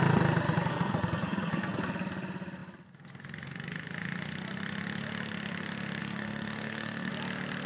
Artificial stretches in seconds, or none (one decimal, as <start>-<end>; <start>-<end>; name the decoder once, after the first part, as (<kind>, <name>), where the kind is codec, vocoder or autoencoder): 0.7-1.8 (codec, SNAC); 6.0-7.1